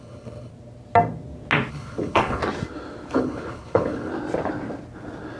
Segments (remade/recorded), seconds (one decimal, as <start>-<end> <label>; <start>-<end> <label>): 0.0-0.5 remade; 0.5-1.7 recorded; 1.7-2.4 remade; 2.4-3.1 recorded; 3.1-4.1 remade; 4.1-5.4 recorded